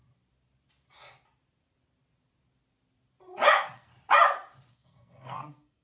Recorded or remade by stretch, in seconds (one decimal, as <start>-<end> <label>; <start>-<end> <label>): 0.0-3.5 recorded; 3.5-3.9 remade; 3.9-4.7 recorded; 4.7-5.8 remade